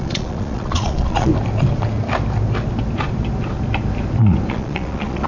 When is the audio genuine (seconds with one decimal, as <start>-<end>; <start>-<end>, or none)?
1.3-4.5